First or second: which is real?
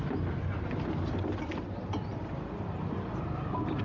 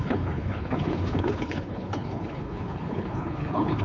first